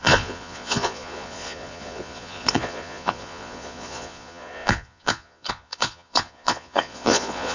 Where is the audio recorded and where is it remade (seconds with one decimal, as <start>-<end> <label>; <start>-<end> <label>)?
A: 0.0-7.5 remade